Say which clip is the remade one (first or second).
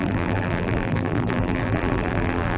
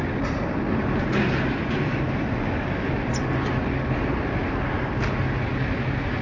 first